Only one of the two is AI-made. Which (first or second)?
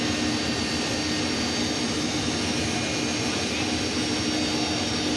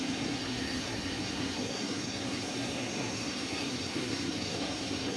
second